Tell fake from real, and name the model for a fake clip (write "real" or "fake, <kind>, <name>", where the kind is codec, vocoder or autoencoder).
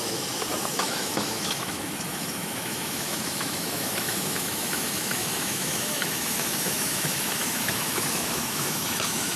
fake, autoencoder, DAC-VAE